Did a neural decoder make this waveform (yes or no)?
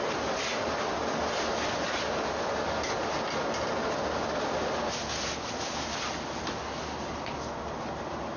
no